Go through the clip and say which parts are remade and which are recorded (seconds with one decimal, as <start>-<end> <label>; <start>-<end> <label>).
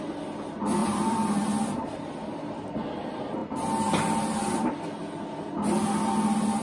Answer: 0.0-0.8 recorded; 0.8-2.4 remade; 2.4-3.4 recorded; 3.4-4.7 remade; 4.7-6.6 recorded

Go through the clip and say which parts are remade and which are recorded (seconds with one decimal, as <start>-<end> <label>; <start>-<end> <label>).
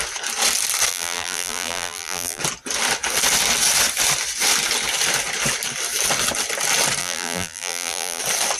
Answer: 0.0-0.9 recorded; 0.9-2.4 remade; 2.4-7.0 recorded; 7.0-8.2 remade; 8.2-8.6 recorded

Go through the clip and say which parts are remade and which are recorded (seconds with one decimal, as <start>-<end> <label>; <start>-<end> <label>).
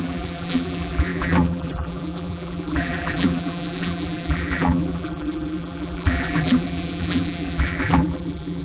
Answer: 0.0-8.6 remade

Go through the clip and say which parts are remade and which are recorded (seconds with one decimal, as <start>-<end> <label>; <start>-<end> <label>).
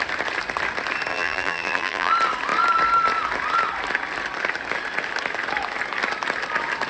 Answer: 0.0-1.1 recorded; 1.1-2.1 remade; 2.1-6.9 recorded